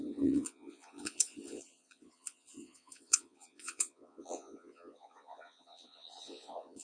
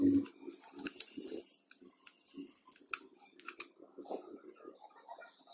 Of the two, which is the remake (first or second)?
first